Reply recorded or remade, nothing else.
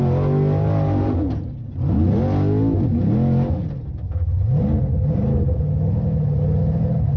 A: recorded